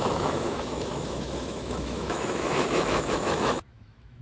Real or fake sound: fake